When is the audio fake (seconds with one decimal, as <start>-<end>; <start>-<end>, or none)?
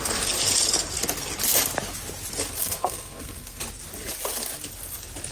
2.6-3.6